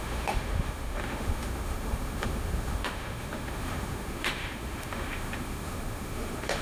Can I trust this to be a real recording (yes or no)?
no